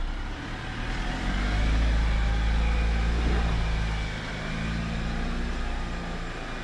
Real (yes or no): yes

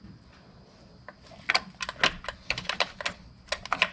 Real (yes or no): yes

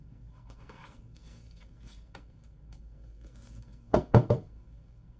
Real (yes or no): no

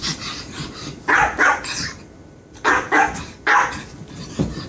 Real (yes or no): yes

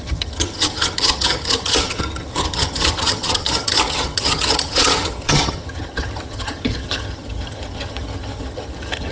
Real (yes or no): no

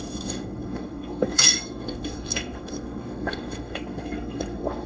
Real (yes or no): no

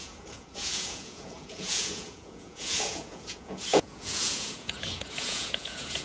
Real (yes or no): no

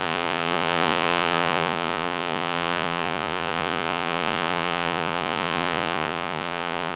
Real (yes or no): no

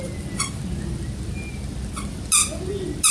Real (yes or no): yes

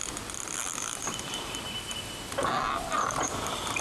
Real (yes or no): yes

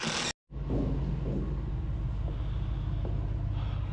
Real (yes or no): yes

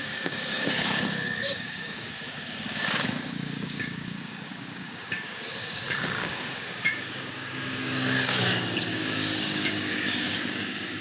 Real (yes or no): no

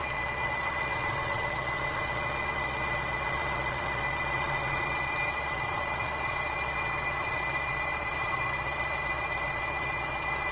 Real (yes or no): no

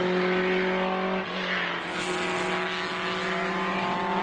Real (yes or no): yes